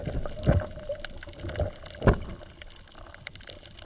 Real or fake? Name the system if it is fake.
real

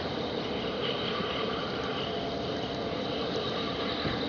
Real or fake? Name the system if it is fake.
real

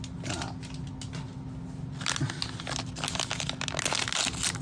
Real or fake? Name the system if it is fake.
real